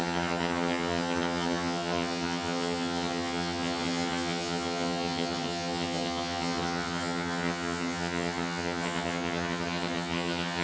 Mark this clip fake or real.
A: fake